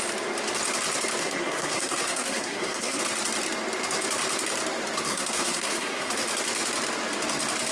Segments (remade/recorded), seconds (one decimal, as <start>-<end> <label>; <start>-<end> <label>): 0.0-1.2 recorded; 1.2-3.0 remade; 3.0-5.1 recorded; 5.1-6.1 remade; 6.1-7.7 recorded

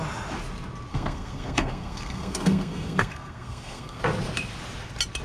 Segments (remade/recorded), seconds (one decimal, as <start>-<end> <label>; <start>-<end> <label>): 0.0-0.9 recorded; 0.9-4.0 remade; 4.0-5.2 recorded